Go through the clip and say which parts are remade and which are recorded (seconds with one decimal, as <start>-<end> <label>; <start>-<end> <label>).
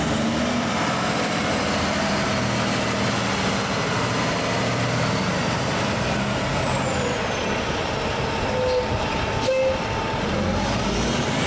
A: 0.0-11.5 recorded